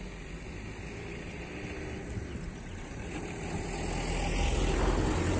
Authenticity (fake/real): real